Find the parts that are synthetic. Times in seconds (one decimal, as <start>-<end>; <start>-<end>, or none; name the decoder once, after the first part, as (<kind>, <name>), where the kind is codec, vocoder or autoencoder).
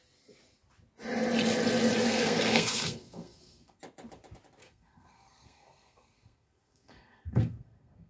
2.0-3.8 (codec, SNAC); 4.6-8.1